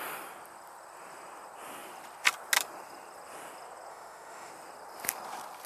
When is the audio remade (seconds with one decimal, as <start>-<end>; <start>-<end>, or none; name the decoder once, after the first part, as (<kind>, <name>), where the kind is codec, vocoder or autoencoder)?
3.9-4.5 (autoencoder, DAC-VAE)